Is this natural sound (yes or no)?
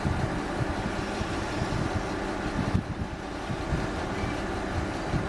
yes